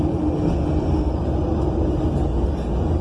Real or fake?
real